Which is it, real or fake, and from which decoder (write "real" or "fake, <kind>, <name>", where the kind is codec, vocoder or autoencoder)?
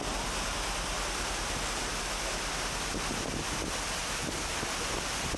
real